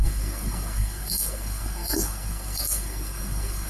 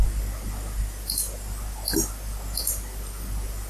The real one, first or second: second